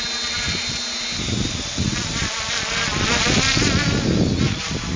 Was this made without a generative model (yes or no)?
yes